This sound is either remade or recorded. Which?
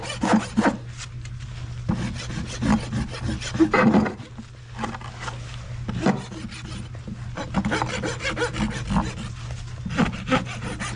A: recorded